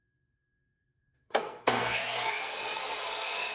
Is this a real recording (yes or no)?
no